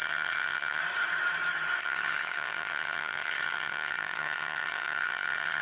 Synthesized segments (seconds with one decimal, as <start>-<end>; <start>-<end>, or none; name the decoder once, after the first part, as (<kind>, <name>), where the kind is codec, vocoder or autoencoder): 0.0-0.8 (vocoder, HiFi-GAN); 1.8-5.6